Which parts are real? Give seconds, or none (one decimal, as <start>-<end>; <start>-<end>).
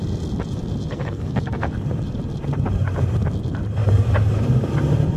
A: 0.0-0.9; 1.7-5.2